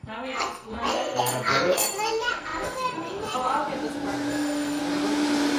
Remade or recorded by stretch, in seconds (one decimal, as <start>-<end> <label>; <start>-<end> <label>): 0.0-3.6 remade; 3.6-4.3 recorded; 4.3-4.8 remade; 4.8-5.6 recorded

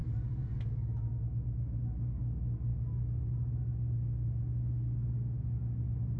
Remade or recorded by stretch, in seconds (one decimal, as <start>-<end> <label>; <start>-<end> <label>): 0.0-6.2 recorded